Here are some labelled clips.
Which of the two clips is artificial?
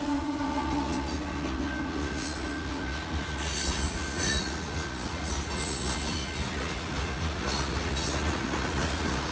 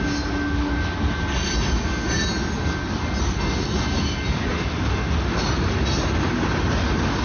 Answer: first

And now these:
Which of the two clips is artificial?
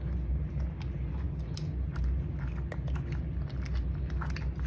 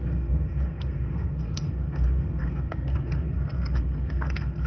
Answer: second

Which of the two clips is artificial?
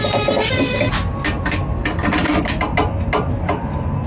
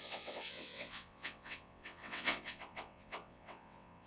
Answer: second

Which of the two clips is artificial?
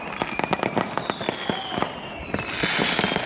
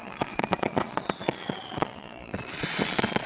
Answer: second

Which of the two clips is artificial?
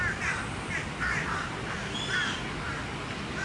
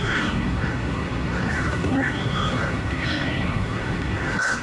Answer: second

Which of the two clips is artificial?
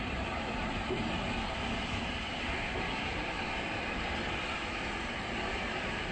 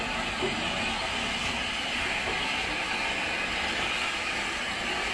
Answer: first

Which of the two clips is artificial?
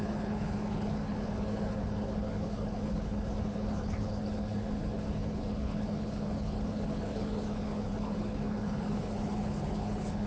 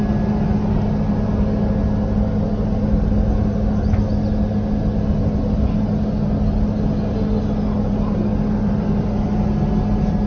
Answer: first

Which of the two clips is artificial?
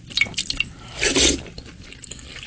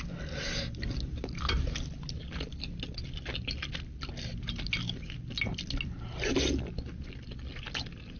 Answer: first